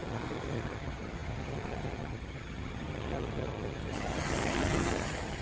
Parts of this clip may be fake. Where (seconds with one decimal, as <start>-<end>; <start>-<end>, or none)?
0.0-5.4